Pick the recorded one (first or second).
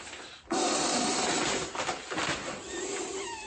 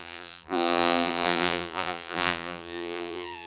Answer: first